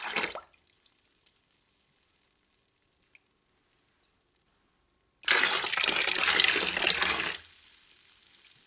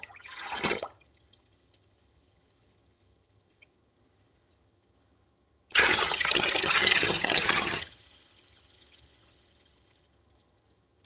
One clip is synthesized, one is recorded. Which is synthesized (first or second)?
second